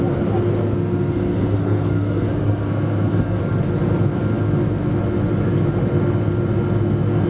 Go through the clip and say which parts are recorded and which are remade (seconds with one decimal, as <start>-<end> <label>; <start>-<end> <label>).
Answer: 0.0-0.6 recorded; 0.6-3.4 remade; 3.4-7.3 recorded